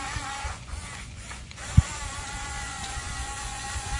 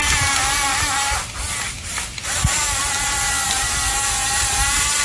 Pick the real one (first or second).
second